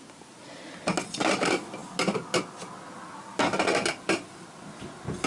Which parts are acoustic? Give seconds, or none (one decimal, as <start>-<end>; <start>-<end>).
0.0-5.3